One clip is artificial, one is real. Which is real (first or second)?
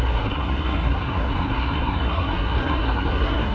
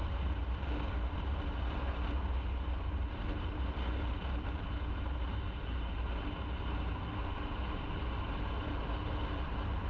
second